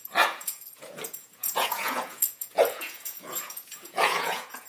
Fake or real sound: fake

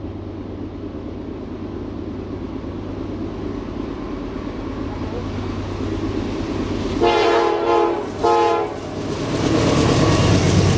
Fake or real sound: real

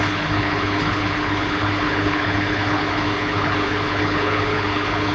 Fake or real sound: fake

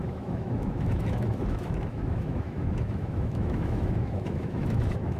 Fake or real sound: fake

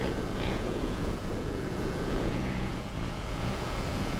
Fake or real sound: fake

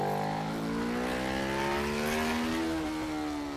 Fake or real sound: real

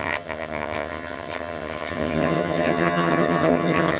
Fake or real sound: fake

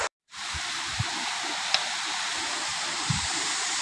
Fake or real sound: fake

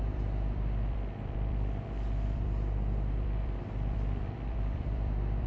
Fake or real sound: fake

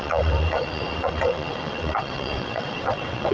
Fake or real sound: fake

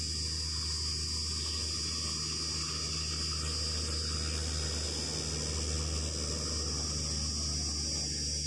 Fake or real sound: real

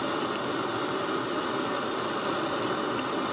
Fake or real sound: real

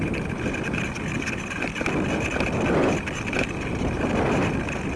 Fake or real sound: real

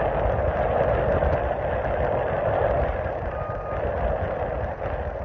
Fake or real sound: real